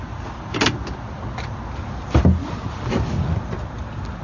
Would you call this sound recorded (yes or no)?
yes